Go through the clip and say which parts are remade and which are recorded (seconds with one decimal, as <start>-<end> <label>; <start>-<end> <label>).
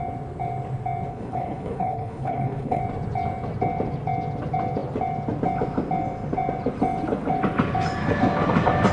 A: 0.0-1.1 recorded; 1.1-2.8 remade; 2.8-8.9 recorded